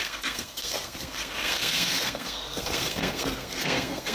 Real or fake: fake